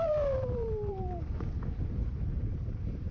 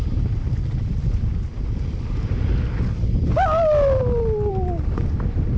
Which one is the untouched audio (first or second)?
second